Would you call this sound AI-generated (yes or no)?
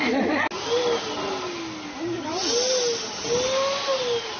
no